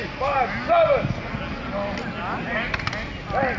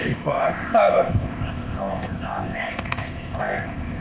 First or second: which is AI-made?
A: second